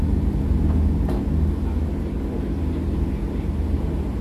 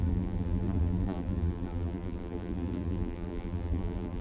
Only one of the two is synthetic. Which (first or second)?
second